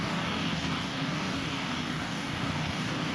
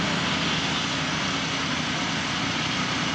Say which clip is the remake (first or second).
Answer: first